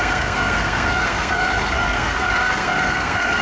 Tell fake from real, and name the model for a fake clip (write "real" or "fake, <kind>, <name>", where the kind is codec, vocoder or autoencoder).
fake, codec, SNAC